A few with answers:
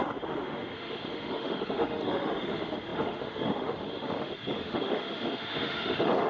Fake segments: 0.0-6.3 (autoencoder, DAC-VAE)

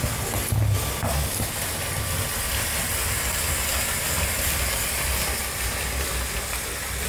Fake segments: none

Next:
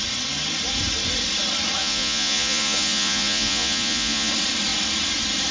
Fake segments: 1.8-4.3 (vocoder, Vocos)

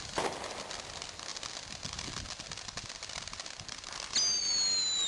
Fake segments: none

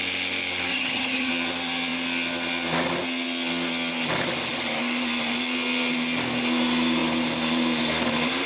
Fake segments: 0.7-1.3 (vocoder, HiFi-GAN)